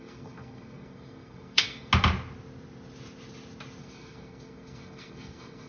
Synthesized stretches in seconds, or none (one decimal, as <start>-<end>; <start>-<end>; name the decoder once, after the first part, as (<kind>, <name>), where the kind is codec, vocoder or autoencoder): 0.0-1.9 (codec, SNAC); 3.8-5.7